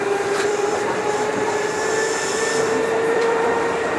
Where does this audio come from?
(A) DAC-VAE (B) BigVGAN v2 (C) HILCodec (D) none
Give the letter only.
B